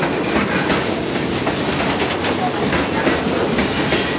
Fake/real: real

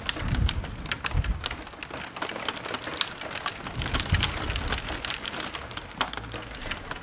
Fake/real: real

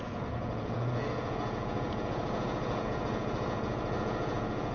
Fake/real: fake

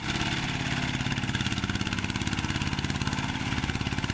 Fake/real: real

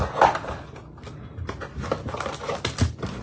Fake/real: real